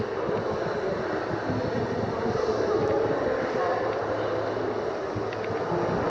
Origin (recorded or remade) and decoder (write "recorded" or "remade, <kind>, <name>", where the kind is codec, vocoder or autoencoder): recorded